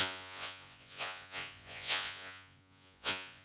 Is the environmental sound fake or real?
fake